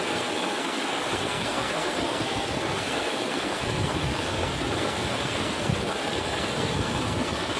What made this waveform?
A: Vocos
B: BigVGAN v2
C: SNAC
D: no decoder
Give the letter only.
C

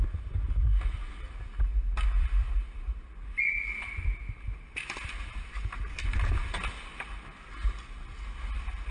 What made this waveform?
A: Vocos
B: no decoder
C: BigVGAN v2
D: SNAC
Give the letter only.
B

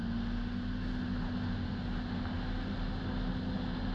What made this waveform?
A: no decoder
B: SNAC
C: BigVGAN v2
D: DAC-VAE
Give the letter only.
A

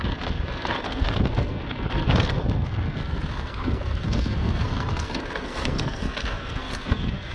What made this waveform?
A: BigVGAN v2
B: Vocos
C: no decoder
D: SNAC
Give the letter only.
D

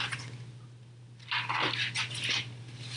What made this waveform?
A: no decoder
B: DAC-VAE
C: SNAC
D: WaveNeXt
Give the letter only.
A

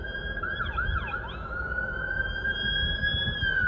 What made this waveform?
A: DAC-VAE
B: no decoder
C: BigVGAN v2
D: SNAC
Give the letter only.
B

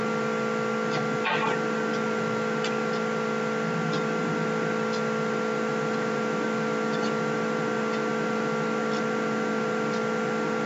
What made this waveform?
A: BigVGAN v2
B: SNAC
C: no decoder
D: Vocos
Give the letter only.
C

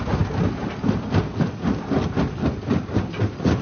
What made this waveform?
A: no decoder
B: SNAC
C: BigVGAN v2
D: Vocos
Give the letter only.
A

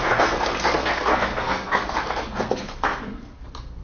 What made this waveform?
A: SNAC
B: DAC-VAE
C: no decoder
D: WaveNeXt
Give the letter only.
A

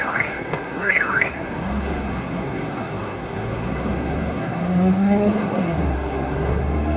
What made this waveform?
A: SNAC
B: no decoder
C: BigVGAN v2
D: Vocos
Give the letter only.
A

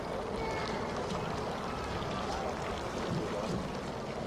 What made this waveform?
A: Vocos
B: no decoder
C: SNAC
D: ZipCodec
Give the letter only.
B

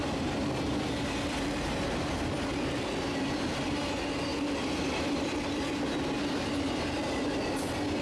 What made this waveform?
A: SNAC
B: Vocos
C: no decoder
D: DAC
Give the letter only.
C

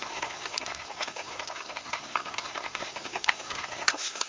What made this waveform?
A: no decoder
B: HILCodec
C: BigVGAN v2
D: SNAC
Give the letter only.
D